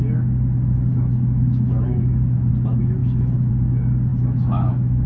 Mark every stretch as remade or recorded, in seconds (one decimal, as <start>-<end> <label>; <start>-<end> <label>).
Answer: 0.0-0.9 recorded; 0.9-2.5 remade; 2.5-3.0 recorded; 3.0-3.5 remade; 3.5-4.1 recorded; 4.1-5.1 remade